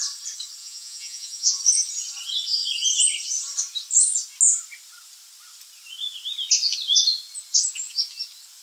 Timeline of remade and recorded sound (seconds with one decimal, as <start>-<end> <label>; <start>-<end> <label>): 0.0-0.6 recorded; 0.6-1.6 remade; 1.6-8.6 recorded